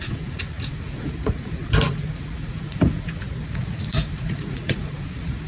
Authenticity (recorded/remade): remade